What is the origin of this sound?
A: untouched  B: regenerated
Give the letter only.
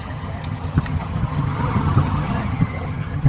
B